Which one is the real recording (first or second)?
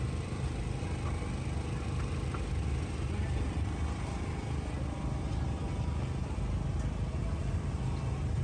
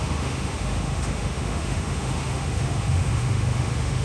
first